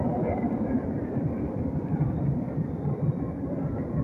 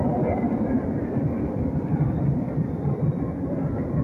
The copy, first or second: first